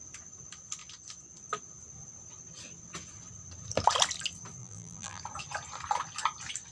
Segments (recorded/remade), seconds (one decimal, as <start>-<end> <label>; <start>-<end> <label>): 0.0-4.6 recorded; 4.6-5.2 remade; 5.2-6.7 recorded